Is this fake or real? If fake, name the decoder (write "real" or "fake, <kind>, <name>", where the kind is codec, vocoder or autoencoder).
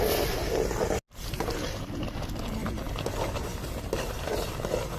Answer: real